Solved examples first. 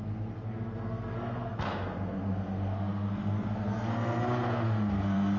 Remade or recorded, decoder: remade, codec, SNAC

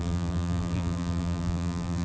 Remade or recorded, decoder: remade, vocoder, BigVGAN v2